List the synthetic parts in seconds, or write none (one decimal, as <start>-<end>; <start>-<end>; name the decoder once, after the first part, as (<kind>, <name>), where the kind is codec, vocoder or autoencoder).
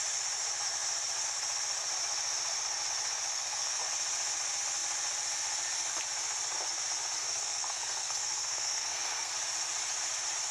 3.3-3.8 (codec, SNAC); 7.2-9.3